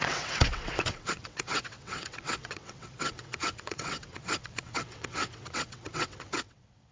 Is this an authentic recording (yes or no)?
no